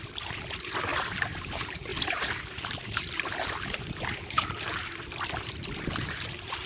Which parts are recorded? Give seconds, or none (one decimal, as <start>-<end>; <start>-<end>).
0.9-1.4